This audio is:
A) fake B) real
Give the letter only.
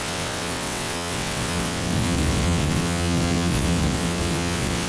A